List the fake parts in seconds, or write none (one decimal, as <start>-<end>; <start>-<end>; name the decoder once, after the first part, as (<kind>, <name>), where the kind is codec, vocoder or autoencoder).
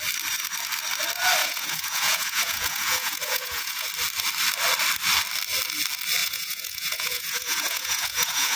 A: 1.4-3.9 (vocoder, Vocos); 6.2-8.6